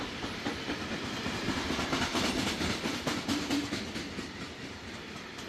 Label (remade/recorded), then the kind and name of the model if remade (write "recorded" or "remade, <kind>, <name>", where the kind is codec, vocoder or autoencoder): remade, vocoder, BigVGAN v2